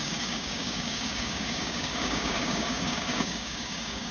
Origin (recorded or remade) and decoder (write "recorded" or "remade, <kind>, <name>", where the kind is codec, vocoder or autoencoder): remade, codec, DAC